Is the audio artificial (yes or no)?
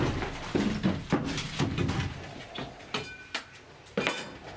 no